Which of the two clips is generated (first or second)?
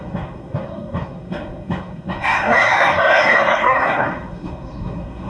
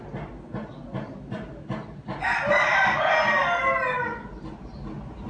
first